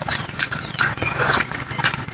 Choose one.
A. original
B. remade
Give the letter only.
B